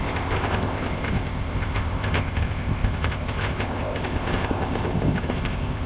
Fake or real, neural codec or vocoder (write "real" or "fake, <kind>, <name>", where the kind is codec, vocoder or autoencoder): fake, codec, ZipCodec